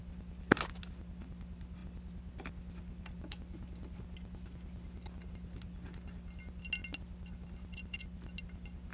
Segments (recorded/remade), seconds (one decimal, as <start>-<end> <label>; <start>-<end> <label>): 0.0-8.9 recorded

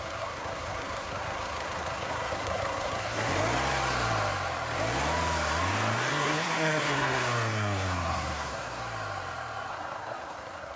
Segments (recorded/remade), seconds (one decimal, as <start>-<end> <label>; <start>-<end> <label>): 0.0-3.3 remade; 3.3-6.1 recorded; 6.1-8.8 remade; 8.8-9.7 recorded; 9.7-10.8 remade

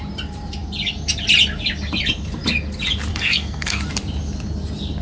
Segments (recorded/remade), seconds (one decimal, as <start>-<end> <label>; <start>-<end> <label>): 0.0-3.1 recorded; 3.1-3.8 remade; 3.8-5.0 recorded